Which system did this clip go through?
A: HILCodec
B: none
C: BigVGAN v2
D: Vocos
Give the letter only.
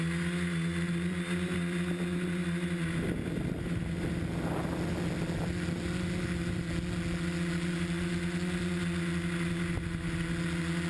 B